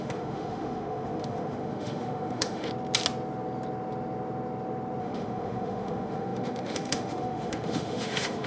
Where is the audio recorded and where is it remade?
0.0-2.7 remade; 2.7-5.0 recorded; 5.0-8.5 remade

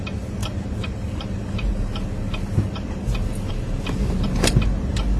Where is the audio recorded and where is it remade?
0.0-5.2 recorded

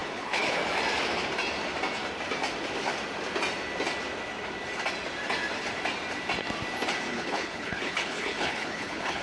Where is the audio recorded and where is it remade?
0.0-0.6 remade; 0.6-7.1 recorded; 7.1-9.2 remade

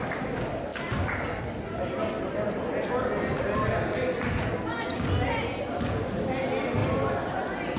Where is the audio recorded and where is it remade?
0.0-7.8 recorded

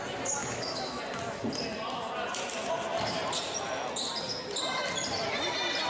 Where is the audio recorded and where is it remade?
0.0-0.4 recorded; 0.4-1.0 remade; 1.0-5.9 recorded